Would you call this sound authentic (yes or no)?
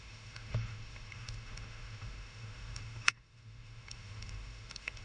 no